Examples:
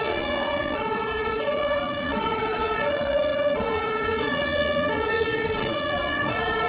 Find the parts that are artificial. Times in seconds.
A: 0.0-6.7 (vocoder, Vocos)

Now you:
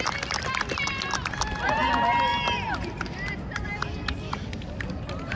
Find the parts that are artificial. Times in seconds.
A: none

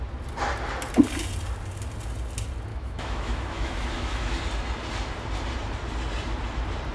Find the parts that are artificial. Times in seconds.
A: 2.7-4.4 (autoencoder, DAC-VAE)

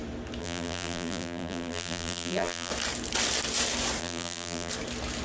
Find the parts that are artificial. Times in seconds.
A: 0.4-2.7 (vocoder, BigVGAN v2); 4.0-4.7

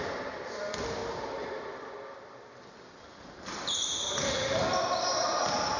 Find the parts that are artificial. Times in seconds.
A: 0.0-1.0 (vocoder, BigVGAN v2); 2.4-5.8

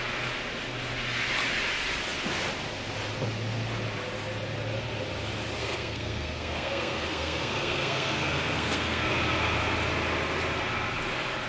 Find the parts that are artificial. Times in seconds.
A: 5.6-9.1 (codec, SNAC)

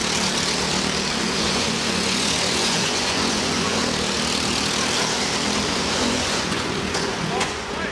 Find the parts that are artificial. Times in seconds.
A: 1.2-3.8 (vocoder, Vocos); 5.7-7.9